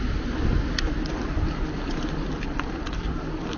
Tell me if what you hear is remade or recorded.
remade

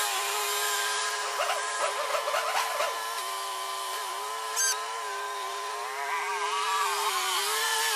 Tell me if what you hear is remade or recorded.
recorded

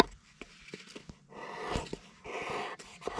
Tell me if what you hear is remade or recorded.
recorded